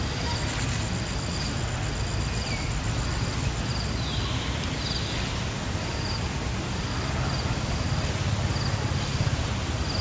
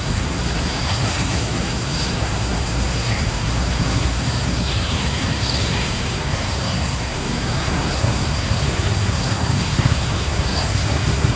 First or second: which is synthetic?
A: second